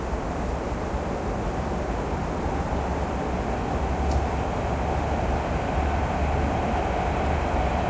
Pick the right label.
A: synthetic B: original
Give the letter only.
B